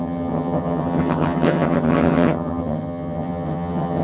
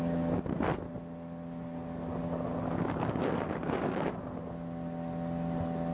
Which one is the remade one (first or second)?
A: first